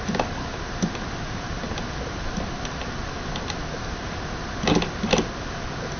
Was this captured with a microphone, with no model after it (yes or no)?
yes